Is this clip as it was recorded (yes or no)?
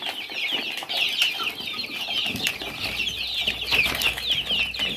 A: yes